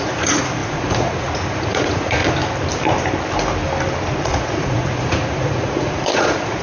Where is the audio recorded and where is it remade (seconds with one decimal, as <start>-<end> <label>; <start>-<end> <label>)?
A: 0.0-2.2 remade; 2.2-4.2 recorded; 4.2-6.6 remade